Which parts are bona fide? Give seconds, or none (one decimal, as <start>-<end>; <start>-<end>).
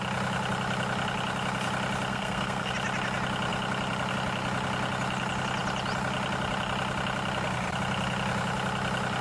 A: 0.0-2.1; 2.7-9.2